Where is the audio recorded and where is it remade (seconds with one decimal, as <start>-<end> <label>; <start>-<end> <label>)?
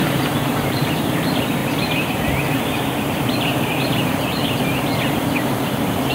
0.0-1.6 remade; 1.6-2.5 recorded; 2.5-4.4 remade; 4.4-6.1 recorded